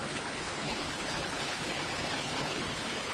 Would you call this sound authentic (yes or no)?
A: no